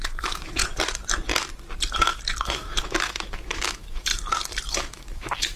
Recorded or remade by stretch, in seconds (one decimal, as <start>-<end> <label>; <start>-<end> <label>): 0.0-0.6 remade; 0.6-2.4 recorded; 2.4-4.1 remade; 4.1-4.9 recorded; 4.9-5.6 remade